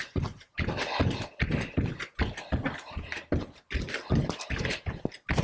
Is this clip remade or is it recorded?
recorded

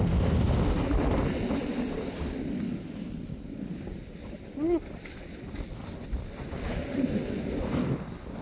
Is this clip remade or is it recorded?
recorded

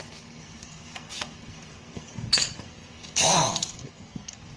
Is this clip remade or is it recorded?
remade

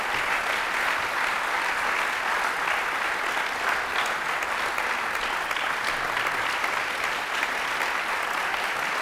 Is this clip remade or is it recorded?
recorded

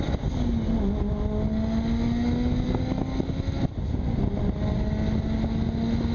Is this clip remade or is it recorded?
recorded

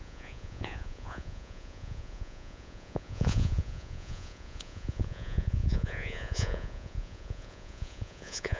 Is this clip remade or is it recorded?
remade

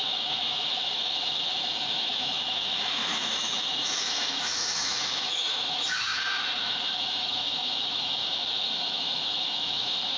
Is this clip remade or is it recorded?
remade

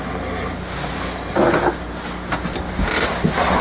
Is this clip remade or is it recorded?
recorded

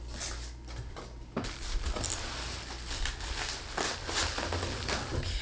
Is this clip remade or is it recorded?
recorded